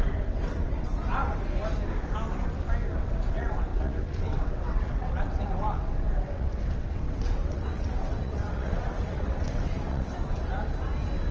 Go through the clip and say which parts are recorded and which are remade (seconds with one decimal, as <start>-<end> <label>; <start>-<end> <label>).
0.0-0.9 remade; 0.9-3.0 recorded; 3.0-10.5 remade; 10.5-11.3 recorded